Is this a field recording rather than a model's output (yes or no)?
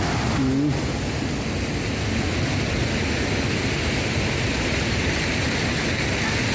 yes